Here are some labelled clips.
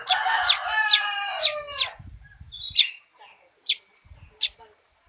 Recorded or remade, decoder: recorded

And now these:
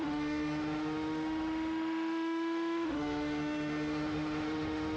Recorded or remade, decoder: remade, autoencoder, DAC-VAE